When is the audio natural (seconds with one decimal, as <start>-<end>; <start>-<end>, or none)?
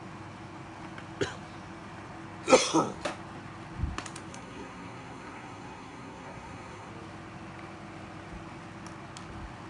0.0-4.3; 6.9-9.7